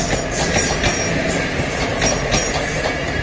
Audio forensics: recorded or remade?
recorded